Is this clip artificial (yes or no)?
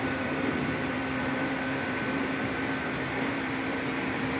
yes